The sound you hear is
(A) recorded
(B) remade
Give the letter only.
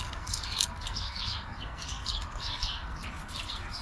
B